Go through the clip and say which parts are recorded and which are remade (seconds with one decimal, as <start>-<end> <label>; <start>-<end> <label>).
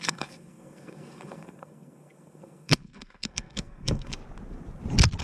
0.0-4.2 remade; 4.2-5.2 recorded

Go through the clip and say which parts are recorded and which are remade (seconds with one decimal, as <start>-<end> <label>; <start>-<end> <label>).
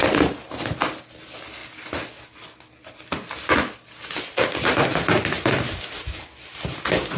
0.0-7.2 recorded